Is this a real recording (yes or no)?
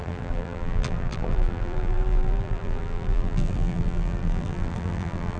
no